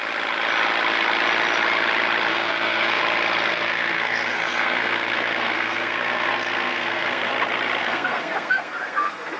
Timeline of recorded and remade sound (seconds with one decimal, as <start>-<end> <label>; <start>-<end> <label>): 0.0-2.3 recorded; 2.3-3.0 remade; 3.0-3.5 recorded; 3.5-7.3 remade; 7.3-7.8 recorded; 7.8-9.4 remade